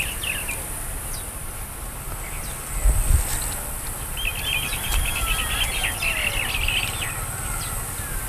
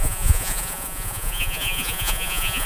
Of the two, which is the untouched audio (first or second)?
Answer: first